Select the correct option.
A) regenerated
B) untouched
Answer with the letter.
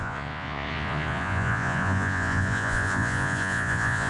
A